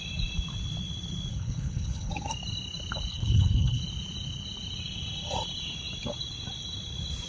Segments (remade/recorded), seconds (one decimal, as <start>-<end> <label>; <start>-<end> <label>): 0.0-1.3 recorded; 1.3-2.1 remade; 2.1-3.1 recorded; 3.1-3.8 remade; 3.8-7.3 recorded